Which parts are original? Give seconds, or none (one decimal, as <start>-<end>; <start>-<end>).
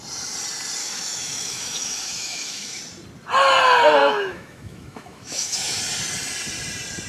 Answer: 0.0-0.8; 2.8-4.0; 5.8-7.1